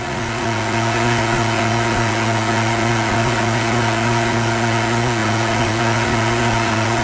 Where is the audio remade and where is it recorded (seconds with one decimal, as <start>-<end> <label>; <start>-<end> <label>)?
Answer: 0.0-7.0 remade